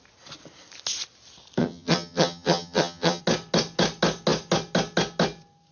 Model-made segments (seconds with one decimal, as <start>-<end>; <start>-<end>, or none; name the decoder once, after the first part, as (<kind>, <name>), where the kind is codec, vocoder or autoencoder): 1.6-3.2 (vocoder, HiFi-GAN)